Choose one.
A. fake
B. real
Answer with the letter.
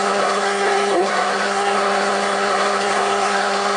A